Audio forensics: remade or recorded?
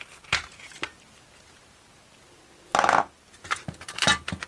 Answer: recorded